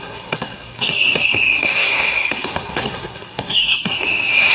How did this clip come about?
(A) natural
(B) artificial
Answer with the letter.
B